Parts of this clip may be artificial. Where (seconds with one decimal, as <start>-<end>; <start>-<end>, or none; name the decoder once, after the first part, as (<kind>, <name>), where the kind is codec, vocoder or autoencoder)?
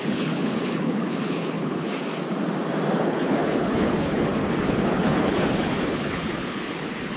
0.0-1.9 (codec, HILCodec); 3.0-7.2